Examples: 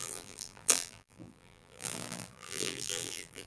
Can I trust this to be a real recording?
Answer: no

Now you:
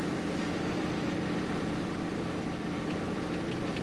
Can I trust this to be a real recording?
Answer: no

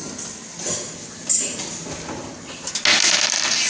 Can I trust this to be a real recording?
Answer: yes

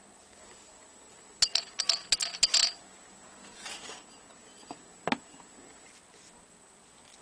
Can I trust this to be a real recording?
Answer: yes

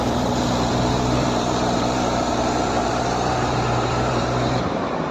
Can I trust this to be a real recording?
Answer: no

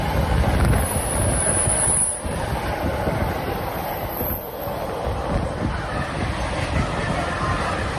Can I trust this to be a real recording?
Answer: yes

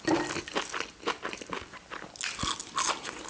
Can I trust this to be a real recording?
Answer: yes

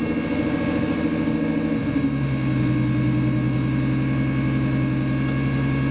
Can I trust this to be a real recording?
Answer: yes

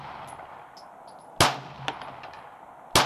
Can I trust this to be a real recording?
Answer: yes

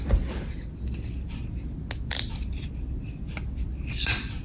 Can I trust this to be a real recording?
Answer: yes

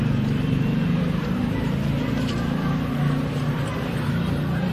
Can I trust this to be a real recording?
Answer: no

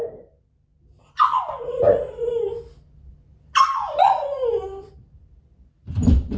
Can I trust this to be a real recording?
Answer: yes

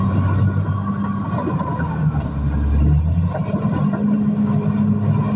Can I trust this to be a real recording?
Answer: yes